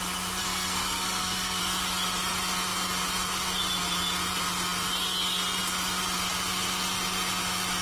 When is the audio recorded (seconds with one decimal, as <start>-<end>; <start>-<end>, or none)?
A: 0.0-0.4; 1.6-7.8